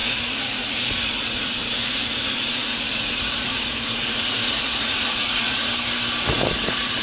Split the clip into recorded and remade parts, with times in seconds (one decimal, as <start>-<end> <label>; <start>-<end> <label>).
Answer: 0.0-5.7 remade; 5.7-6.3 recorded; 6.3-7.0 remade